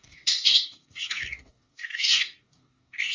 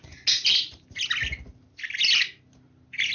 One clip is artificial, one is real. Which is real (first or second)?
second